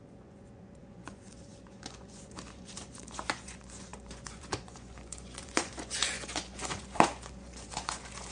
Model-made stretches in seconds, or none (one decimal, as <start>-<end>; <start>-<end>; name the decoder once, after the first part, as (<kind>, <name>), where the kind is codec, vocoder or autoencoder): 0.0-8.3 (vocoder, Vocos)